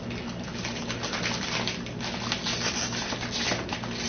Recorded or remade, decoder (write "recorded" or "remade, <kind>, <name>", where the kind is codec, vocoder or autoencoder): remade, vocoder, BigVGAN v2